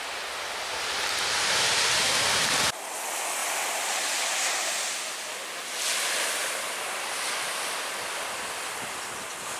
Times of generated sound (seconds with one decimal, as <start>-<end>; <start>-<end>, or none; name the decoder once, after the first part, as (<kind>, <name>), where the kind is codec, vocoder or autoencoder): none